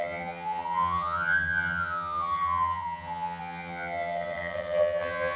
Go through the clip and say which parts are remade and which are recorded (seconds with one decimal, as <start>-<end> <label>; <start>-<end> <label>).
0.0-5.4 remade